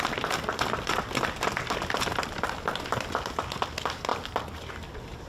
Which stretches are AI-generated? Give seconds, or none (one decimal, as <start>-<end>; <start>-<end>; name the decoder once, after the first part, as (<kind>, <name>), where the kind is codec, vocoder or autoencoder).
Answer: none

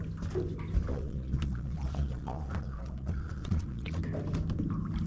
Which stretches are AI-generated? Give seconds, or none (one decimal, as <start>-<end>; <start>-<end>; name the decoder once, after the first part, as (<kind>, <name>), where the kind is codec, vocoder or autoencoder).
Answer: 0.9-4.0 (vocoder, Vocos)

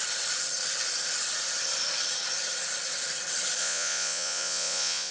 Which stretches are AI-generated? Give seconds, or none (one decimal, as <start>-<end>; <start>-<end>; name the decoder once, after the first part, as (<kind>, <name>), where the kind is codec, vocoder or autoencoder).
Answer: 3.6-5.1 (vocoder, Vocos)